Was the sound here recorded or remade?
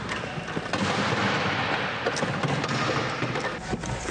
recorded